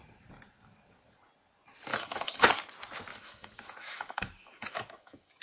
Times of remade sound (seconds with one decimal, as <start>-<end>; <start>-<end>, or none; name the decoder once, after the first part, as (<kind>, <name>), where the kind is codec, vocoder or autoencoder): 1.9-2.5 (autoencoder, DAC-VAE); 3.1-5.4